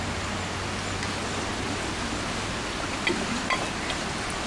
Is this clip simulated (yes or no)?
no